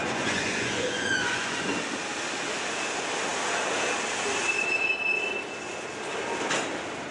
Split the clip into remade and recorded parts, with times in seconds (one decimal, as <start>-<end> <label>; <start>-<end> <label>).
0.0-1.7 remade; 1.7-7.1 recorded